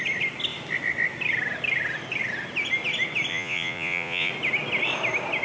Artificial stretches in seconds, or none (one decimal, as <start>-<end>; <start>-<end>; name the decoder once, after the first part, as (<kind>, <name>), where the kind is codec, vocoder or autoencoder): 3.3-4.3 (vocoder, Vocos)